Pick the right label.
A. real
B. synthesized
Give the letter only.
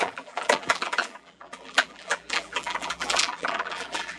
B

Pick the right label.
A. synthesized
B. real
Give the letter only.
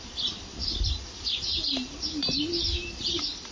B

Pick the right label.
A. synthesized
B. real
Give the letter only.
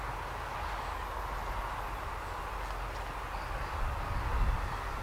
B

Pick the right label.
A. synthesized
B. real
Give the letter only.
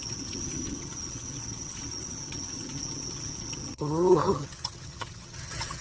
A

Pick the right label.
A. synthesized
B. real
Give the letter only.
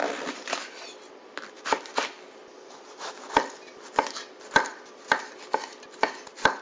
B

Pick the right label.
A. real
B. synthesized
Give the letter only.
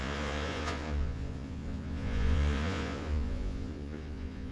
B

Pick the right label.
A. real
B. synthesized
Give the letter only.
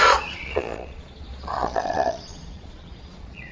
B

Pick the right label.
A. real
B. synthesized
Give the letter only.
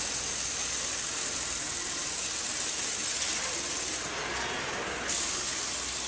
A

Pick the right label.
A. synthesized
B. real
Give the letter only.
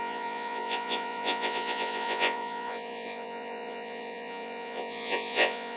A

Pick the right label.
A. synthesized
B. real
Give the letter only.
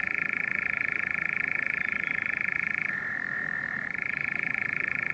A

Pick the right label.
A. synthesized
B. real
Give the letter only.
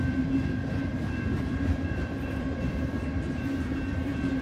A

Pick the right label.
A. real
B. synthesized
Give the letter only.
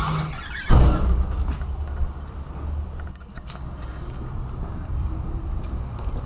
A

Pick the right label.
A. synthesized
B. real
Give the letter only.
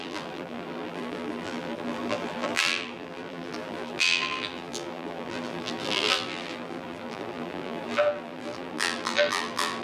A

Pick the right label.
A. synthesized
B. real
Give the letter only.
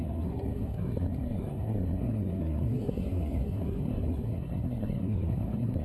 A